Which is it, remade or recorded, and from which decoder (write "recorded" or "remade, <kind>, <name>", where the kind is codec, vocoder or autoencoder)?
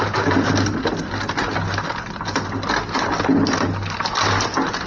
recorded